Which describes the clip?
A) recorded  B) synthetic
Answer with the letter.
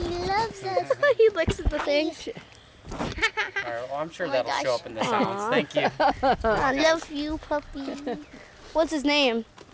A